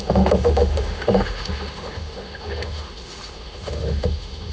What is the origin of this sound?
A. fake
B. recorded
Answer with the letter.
A